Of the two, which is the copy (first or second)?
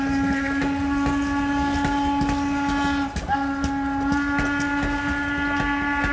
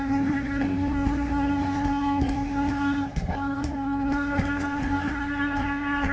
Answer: second